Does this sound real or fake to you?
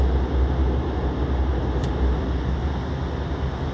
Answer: real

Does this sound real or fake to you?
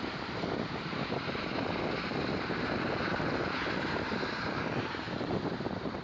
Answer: fake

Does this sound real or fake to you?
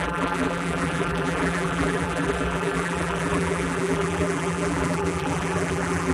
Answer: fake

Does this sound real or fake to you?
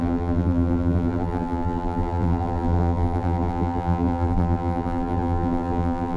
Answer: fake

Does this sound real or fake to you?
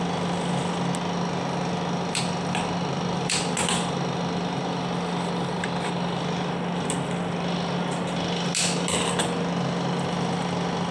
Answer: real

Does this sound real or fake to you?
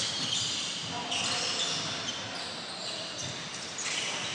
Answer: real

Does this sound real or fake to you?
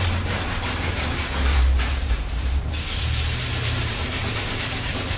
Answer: fake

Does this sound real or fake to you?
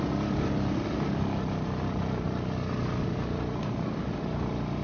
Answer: real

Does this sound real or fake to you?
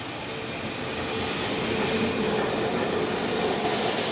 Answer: real